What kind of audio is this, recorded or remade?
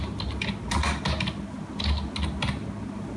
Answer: recorded